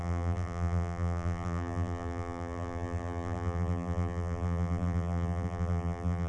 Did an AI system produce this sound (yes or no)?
yes